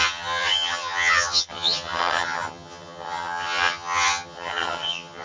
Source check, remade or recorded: remade